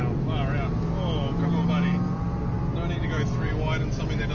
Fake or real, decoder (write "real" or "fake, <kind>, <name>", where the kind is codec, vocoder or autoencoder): real